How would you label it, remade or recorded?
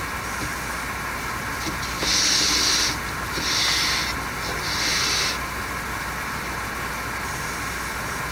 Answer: recorded